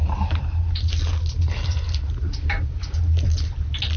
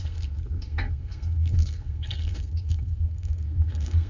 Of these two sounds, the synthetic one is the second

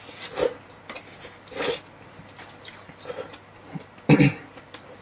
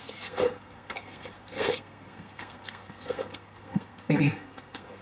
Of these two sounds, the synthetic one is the second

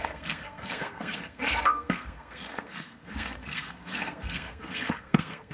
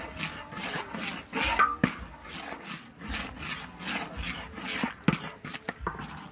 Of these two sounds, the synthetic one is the first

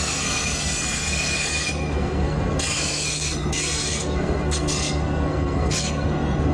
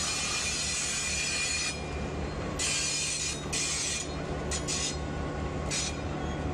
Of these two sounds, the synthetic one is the first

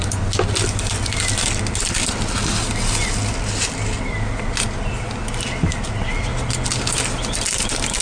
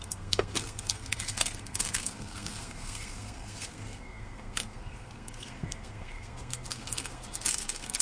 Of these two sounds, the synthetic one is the second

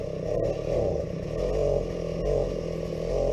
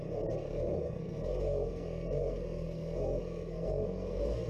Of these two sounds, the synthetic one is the second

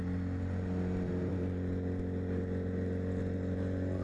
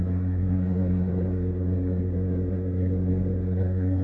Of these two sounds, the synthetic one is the second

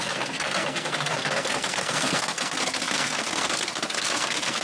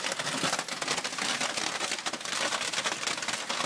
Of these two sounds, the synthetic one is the first